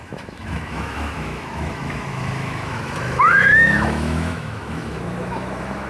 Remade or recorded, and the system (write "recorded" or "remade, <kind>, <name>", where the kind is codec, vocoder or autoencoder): remade, autoencoder, DAC-VAE